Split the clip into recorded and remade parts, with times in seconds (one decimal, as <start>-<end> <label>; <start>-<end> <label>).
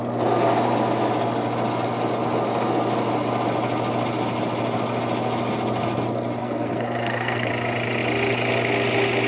0.0-6.4 recorded; 6.4-7.5 remade; 7.5-9.3 recorded